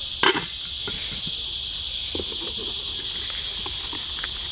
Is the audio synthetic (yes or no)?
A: no